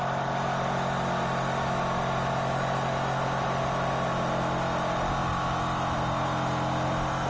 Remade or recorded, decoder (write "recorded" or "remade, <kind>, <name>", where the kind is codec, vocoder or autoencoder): recorded